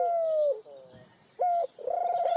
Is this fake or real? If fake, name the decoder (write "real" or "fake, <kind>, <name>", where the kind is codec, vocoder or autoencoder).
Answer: real